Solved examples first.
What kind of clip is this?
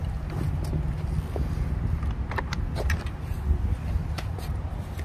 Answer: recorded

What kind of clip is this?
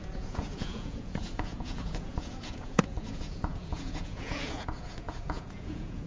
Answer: remade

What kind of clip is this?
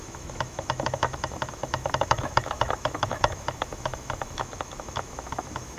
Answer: remade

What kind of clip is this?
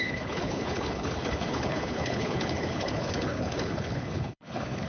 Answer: remade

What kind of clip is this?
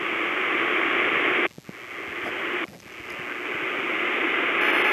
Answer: recorded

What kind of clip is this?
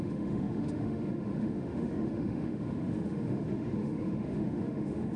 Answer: remade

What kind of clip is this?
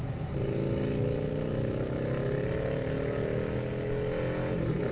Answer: recorded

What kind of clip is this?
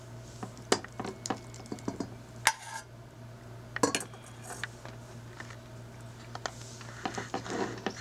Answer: recorded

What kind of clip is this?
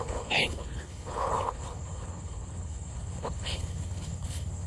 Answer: remade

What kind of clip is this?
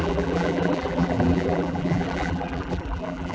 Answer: remade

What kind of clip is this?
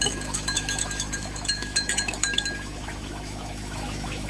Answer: remade